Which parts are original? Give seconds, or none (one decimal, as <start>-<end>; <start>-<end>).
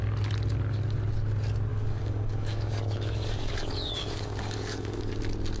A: 0.0-1.7; 5.1-5.6